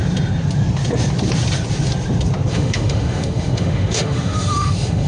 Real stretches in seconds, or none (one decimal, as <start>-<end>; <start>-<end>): 0.0-2.5